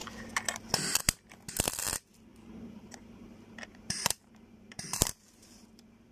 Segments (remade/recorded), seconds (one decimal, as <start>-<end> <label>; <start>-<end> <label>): 0.0-2.3 recorded; 2.3-6.1 remade